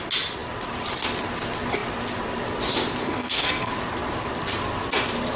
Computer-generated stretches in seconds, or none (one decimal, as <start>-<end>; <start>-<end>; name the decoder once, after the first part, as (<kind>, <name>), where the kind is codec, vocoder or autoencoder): 3.0-3.7 (codec, SNAC)